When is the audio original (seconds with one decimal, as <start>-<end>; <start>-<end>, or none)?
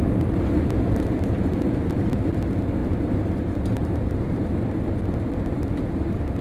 0.0-2.8; 4.5-6.4